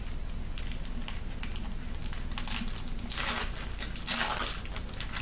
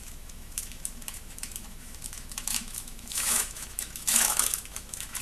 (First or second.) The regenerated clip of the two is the second